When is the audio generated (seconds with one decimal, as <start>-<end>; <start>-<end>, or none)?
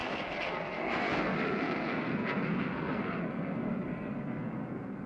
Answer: 0.0-5.1